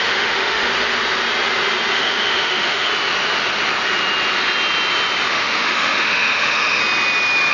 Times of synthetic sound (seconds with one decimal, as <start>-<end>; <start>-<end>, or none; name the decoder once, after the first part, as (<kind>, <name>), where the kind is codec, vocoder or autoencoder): 0.0-0.7 (autoencoder, DAC-VAE); 1.9-2.9; 5.3-6.8